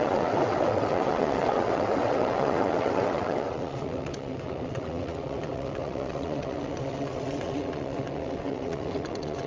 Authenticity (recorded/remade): remade